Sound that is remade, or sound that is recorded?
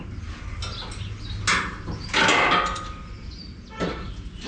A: recorded